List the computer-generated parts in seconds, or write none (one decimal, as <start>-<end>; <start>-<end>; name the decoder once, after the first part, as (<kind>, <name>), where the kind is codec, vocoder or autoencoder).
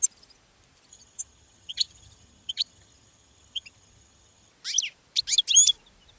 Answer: 0.9-4.5 (vocoder, HiFi-GAN)